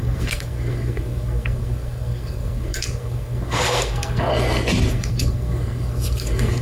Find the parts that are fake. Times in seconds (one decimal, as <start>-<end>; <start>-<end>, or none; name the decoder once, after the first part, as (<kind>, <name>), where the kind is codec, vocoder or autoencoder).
0.0-4.3 (codec, SNAC); 4.9-6.6